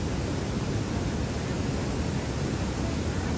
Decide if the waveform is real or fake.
real